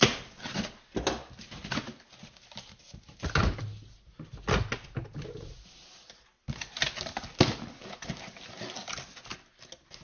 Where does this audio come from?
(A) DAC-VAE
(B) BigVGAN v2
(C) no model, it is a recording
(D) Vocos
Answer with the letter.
C